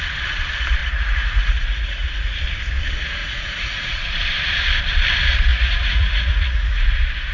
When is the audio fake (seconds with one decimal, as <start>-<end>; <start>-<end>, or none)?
0.8-2.4; 3.2-4.2; 5.5-6.8